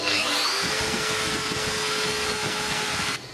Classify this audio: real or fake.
fake